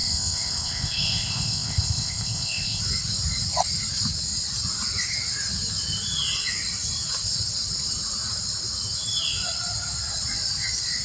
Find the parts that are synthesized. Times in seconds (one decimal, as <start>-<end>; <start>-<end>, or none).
0.0-2.8